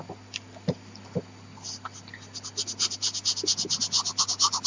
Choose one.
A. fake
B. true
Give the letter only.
B